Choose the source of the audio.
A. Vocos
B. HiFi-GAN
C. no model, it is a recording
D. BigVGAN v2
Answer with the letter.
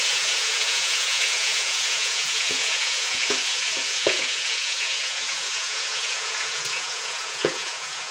A